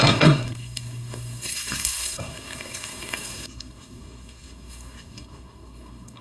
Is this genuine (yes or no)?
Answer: no